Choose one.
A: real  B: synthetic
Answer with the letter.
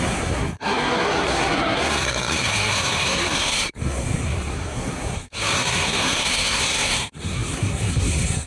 B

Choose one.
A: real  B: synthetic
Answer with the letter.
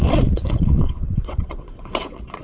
B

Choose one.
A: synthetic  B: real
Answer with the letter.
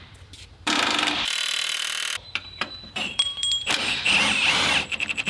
A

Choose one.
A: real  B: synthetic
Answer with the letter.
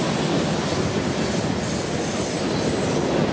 A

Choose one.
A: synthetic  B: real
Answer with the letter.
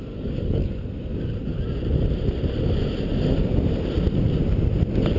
B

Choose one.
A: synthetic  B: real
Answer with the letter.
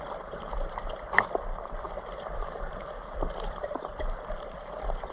A